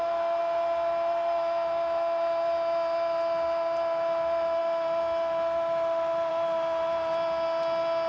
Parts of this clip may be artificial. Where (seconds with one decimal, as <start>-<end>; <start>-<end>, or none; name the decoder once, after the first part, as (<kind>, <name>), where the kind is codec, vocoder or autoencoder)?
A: none